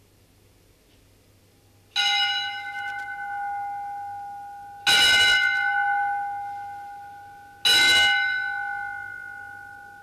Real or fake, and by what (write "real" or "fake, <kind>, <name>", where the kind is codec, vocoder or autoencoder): real